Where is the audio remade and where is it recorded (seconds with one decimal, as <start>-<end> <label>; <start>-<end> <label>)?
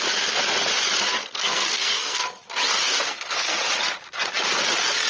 0.0-1.2 recorded; 1.2-2.4 remade; 2.4-2.9 recorded; 2.9-3.6 remade; 3.6-5.1 recorded